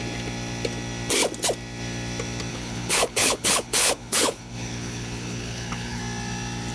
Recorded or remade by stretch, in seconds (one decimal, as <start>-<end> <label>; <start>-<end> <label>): 0.0-2.5 recorded; 2.5-6.0 remade; 6.0-6.7 recorded